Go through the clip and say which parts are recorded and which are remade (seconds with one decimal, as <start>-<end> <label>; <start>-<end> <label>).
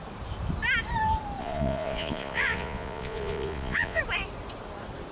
0.0-1.4 recorded; 1.4-4.0 remade; 4.0-5.1 recorded